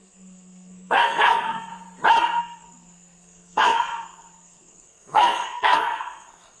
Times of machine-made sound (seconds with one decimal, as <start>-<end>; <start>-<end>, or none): 0.0-1.7; 2.4-6.6